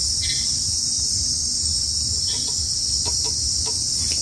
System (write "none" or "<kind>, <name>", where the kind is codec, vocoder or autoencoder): none